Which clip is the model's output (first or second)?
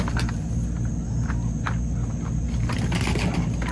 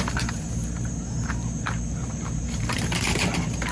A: second